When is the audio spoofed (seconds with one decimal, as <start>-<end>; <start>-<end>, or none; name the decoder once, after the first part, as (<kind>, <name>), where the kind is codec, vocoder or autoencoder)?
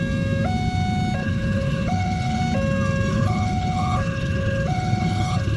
1.2-2.4 (codec, HILCodec); 3.1-5.6